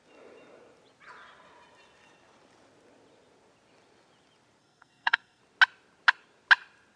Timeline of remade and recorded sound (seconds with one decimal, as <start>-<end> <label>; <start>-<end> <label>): 0.0-4.6 recorded; 4.6-5.4 remade; 5.4-7.0 recorded